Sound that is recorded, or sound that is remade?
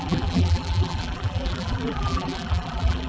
remade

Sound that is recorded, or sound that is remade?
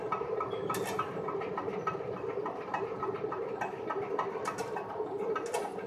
recorded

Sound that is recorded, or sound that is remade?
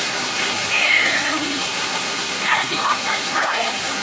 remade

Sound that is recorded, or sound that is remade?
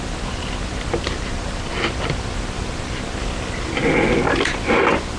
recorded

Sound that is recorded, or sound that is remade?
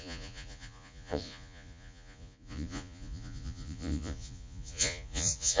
remade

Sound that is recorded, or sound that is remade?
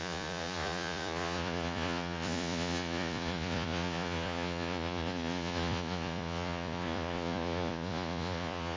remade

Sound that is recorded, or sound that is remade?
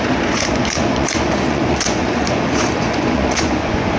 remade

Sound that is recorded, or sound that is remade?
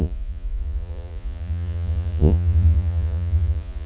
remade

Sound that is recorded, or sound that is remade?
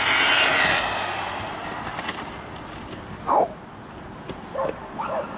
recorded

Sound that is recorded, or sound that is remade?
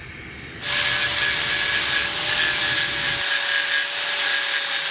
recorded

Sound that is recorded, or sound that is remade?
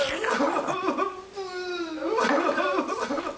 recorded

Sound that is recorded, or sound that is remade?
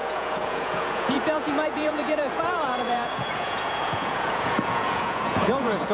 remade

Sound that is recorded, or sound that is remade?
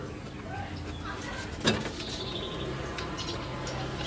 recorded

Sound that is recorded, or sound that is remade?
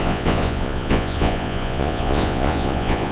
remade